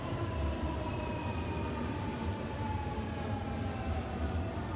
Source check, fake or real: real